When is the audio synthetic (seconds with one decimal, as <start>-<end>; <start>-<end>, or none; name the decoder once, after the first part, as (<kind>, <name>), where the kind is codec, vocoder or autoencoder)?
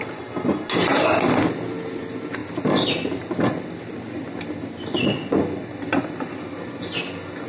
none